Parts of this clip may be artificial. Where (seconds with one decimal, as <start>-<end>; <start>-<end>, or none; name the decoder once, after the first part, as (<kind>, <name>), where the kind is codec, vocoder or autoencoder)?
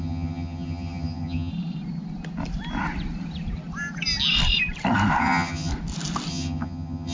0.0-1.5 (vocoder, HiFi-GAN); 5.2-5.7; 6.3-7.1